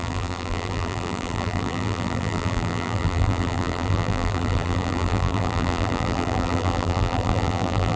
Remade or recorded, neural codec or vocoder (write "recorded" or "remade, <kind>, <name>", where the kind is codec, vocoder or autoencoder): remade, vocoder, BigVGAN v2